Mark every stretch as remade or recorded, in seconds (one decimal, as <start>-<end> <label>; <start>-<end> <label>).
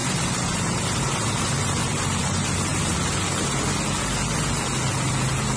0.0-5.6 recorded